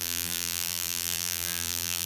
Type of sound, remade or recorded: remade